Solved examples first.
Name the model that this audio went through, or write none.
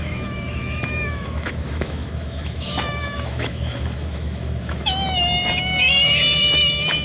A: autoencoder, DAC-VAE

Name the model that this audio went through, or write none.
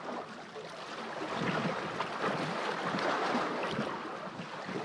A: none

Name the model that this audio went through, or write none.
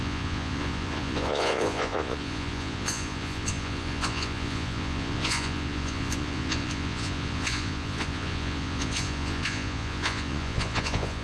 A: vocoder, Vocos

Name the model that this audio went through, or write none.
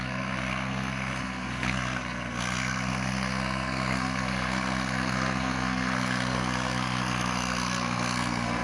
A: codec, SNAC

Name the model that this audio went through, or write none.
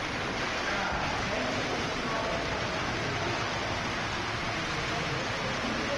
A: none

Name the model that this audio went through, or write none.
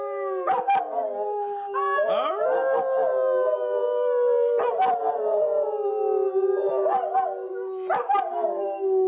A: none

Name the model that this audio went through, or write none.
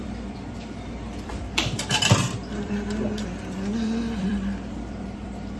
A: vocoder, BigVGAN v2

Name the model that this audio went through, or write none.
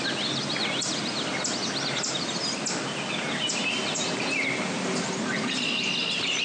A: none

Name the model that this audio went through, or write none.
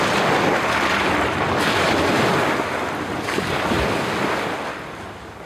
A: none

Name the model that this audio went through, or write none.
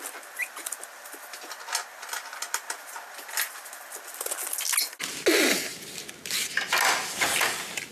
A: none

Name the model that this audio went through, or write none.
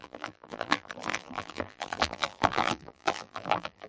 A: vocoder, BigVGAN v2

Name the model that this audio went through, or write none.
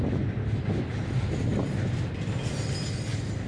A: none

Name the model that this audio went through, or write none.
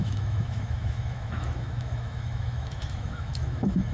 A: autoencoder, DAC-VAE